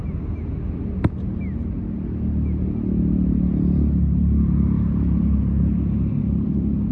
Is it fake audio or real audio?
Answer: real